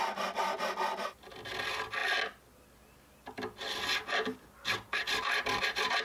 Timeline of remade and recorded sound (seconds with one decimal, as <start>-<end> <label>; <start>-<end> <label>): 0.0-6.0 recorded